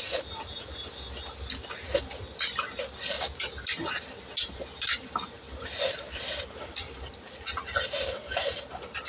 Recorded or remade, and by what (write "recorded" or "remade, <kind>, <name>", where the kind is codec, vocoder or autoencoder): recorded